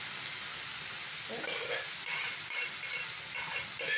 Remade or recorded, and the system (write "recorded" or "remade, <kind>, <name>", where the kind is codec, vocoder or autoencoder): recorded